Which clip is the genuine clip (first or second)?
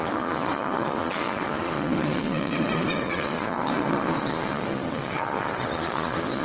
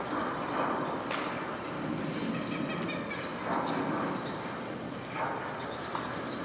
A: second